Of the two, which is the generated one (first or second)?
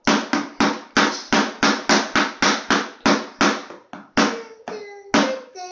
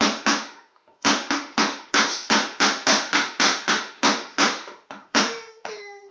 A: second